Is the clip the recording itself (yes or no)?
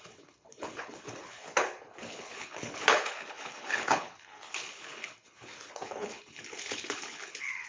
no